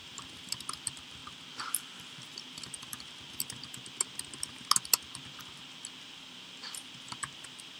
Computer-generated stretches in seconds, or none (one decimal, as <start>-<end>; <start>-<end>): 0.0-0.5